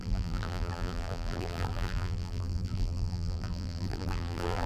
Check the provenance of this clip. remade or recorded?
remade